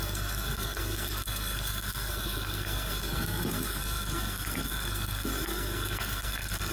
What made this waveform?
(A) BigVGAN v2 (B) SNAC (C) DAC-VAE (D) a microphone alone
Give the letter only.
B